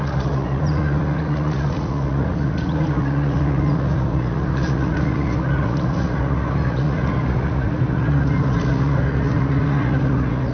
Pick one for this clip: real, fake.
fake